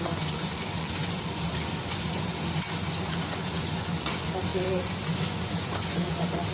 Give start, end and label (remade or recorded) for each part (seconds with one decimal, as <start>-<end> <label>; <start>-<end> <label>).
0.0-6.5 remade